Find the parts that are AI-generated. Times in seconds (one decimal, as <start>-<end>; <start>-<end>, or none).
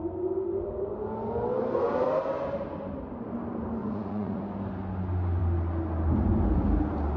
3.8-4.4